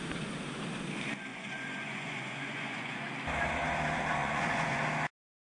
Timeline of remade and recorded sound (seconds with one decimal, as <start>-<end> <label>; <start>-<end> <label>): 0.0-1.3 recorded; 1.3-3.1 remade; 3.1-4.2 recorded; 4.2-4.8 remade; 4.8-5.5 recorded